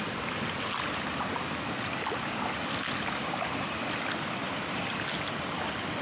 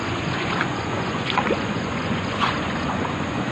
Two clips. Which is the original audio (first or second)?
first